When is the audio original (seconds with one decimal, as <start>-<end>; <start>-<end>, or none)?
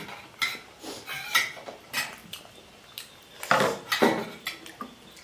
0.0-5.2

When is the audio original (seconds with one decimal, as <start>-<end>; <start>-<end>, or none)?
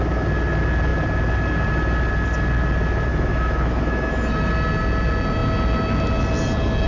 0.0-3.1; 4.5-6.9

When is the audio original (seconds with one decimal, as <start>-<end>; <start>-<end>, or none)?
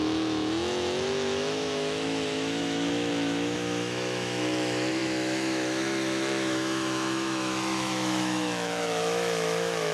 none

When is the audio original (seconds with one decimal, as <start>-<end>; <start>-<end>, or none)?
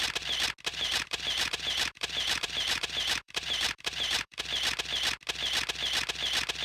0.0-0.7; 4.4-6.6